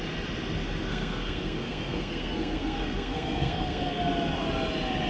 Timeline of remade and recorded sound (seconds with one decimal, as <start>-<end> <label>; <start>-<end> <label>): 0.0-0.9 recorded; 0.9-4.0 remade; 4.0-5.1 recorded